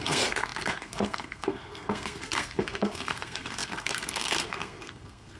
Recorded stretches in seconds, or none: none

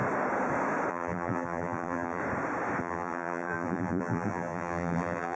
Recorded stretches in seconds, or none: 0.0-0.9; 2.2-2.8

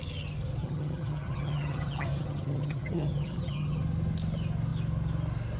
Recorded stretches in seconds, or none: 0.0-0.6; 3.8-5.6

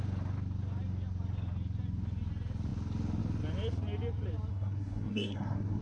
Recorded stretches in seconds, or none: 0.0-4.5

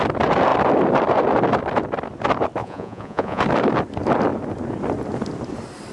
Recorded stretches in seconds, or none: 0.0-2.6; 3.4-5.9

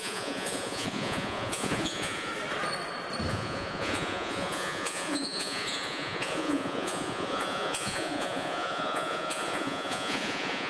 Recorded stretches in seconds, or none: 2.3-3.3

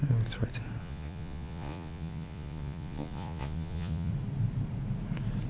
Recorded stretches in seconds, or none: 0.0-0.8; 4.1-5.5

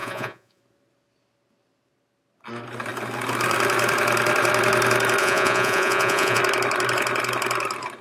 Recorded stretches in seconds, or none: 0.6-5.2; 6.4-8.0